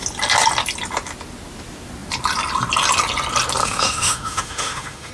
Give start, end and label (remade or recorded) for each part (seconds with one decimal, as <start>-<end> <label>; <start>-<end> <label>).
0.0-3.6 recorded; 3.6-5.1 remade